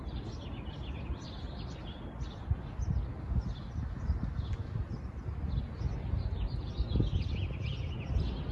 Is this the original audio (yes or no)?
yes